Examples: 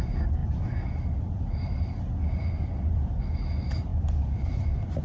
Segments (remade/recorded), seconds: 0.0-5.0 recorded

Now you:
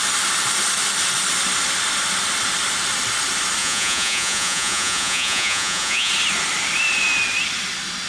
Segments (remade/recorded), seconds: 0.0-3.6 recorded; 3.6-6.1 remade; 6.1-8.1 recorded

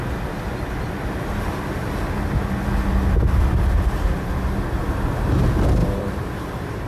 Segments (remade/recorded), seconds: 0.0-5.8 recorded; 5.8-6.9 remade

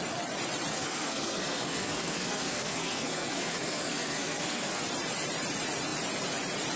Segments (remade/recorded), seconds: 0.0-0.7 recorded; 0.7-4.8 remade; 4.8-6.8 recorded